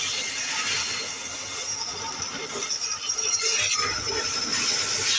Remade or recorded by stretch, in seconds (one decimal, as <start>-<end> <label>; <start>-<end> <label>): 0.0-5.2 recorded